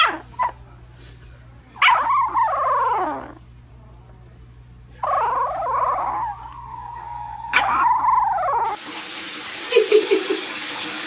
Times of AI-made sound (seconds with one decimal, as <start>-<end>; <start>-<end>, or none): 6.7-7.8; 9.9-11.1